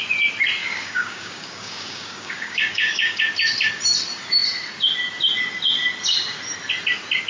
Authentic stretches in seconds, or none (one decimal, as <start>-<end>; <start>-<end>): 0.0-0.6; 3.2-7.3